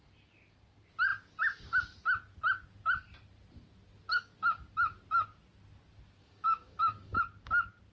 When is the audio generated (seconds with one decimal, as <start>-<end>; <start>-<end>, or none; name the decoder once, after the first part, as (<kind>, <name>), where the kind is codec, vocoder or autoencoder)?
6.2-7.2 (codec, DAC)